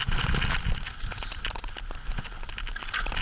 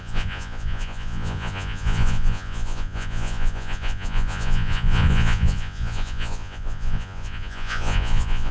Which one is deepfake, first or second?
second